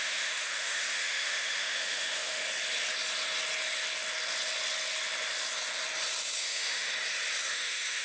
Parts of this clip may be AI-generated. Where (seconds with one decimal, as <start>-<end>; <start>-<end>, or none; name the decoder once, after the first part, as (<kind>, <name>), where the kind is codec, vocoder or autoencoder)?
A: 0.0-2.4 (autoencoder, DAC-VAE); 6.4-6.9; 7.5-8.0